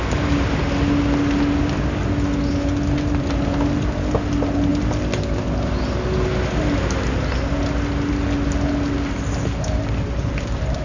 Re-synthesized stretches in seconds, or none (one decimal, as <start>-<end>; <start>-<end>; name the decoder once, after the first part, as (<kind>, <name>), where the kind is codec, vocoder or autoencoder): none